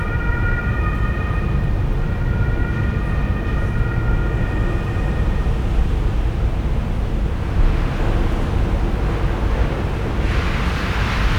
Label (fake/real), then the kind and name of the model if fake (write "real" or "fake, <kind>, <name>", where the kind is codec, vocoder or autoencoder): real